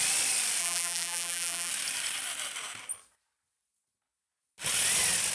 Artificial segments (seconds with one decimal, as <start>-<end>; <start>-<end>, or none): 0.6-1.7